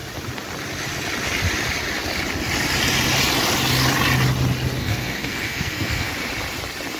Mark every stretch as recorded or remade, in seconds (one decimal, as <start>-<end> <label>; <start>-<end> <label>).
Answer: 0.0-4.8 recorded; 4.8-6.1 remade; 6.1-7.0 recorded